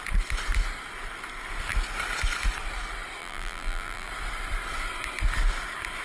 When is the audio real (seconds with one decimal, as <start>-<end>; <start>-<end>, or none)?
0.0-3.2; 4.1-6.0